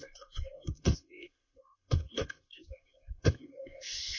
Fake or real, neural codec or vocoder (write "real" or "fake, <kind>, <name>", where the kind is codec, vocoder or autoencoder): fake, codec, ZipCodec